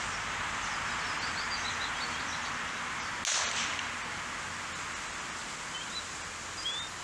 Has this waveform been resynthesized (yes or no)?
no